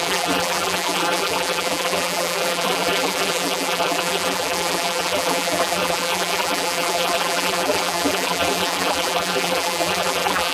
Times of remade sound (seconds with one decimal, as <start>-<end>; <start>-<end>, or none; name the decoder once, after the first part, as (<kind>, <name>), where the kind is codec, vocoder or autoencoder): 0.0-10.5 (vocoder, BigVGAN v2)